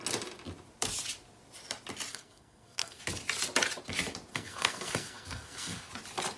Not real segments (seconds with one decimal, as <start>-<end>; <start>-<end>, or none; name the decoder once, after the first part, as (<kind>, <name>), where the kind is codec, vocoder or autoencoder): 2.1-3.0 (codec, SNAC); 4.3-5.9